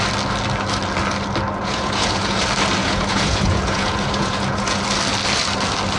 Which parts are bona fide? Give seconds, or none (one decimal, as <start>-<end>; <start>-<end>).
0.0-1.6; 2.4-2.8; 4.8-6.0